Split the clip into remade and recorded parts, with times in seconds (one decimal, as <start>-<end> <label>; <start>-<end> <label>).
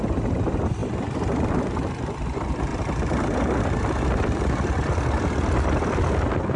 0.0-2.7 remade; 2.7-6.6 recorded